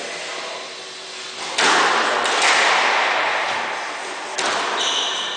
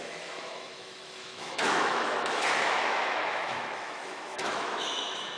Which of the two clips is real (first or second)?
first